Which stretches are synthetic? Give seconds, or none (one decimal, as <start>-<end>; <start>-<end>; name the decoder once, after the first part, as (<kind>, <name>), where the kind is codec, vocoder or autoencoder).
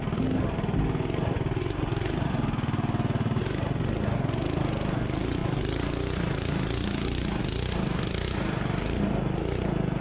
none